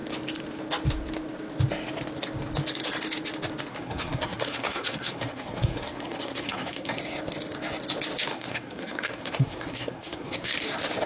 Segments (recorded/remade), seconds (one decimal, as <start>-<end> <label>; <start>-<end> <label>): 0.0-3.7 recorded; 3.7-7.0 remade; 7.0-8.3 recorded; 8.3-10.5 remade; 10.5-11.1 recorded

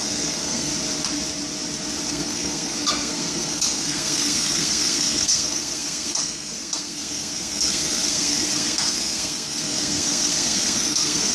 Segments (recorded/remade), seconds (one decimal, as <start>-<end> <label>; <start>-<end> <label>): 0.0-0.7 remade; 0.7-2.1 recorded; 2.1-11.3 remade

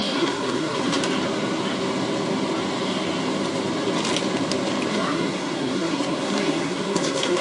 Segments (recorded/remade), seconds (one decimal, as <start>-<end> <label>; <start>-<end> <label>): 0.0-1.0 remade; 1.0-4.9 recorded; 4.9-7.4 remade

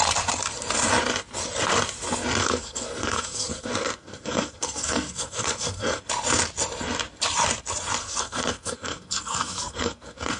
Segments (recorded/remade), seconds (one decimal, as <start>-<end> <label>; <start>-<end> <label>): 0.0-2.4 recorded; 2.4-6.0 remade; 6.0-8.0 recorded; 8.0-10.4 remade